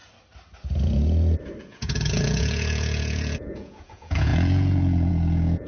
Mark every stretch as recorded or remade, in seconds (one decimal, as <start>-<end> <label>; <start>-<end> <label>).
0.0-1.6 recorded; 1.6-5.7 remade